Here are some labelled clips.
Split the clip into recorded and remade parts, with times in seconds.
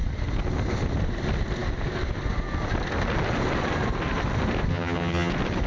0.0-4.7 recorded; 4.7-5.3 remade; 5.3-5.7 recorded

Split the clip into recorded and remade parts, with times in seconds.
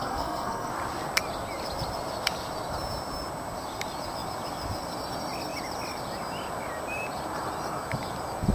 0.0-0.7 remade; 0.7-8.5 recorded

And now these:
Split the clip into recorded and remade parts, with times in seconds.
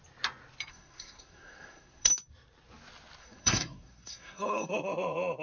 0.0-0.7 recorded; 0.7-2.1 remade; 2.1-3.2 recorded; 3.2-4.7 remade; 4.7-5.4 recorded